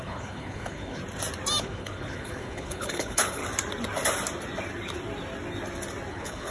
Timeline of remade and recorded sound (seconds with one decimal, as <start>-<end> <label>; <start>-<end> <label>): 0.0-1.0 remade; 1.0-1.6 recorded; 1.6-3.4 remade; 3.4-6.1 recorded; 6.1-6.5 remade

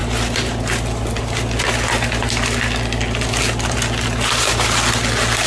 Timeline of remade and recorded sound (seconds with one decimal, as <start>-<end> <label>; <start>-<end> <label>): 0.0-5.5 recorded